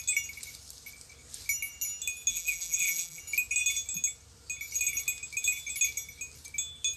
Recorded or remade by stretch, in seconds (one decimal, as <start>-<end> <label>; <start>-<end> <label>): 0.0-2.3 recorded; 2.3-3.2 remade; 3.2-7.0 recorded